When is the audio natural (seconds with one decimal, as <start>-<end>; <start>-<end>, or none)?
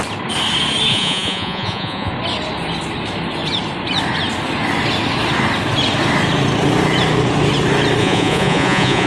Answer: 0.0-0.9; 2.1-8.0